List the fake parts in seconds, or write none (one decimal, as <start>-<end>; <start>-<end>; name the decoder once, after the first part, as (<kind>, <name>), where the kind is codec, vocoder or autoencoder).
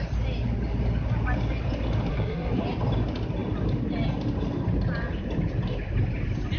2.1-2.6 (codec, SNAC)